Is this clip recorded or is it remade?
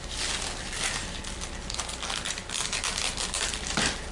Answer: recorded